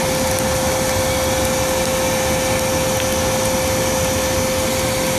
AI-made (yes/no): no